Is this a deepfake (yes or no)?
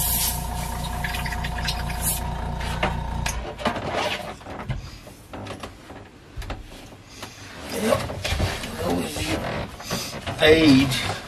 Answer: no